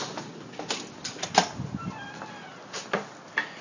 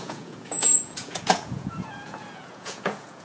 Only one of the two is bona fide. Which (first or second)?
first